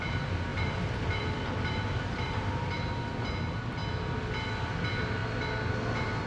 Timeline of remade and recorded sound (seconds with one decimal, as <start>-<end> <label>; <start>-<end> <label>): 0.0-0.5 recorded; 0.5-2.7 remade; 2.7-6.3 recorded